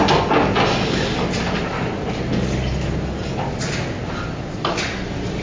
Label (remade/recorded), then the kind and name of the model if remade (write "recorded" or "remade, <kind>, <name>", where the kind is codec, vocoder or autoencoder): recorded